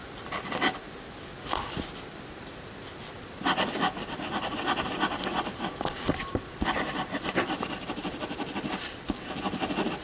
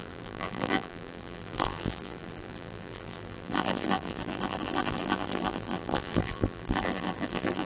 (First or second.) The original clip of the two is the first